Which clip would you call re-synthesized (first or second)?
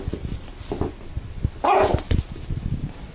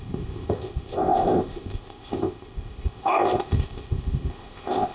second